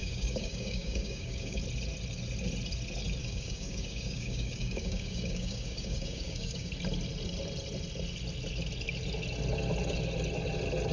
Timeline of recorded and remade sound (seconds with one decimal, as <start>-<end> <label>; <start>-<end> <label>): 0.0-1.6 remade; 1.6-3.2 recorded; 3.2-6.7 remade; 6.7-10.9 recorded